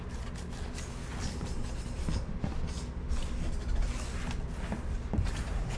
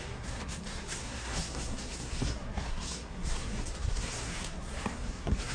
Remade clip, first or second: second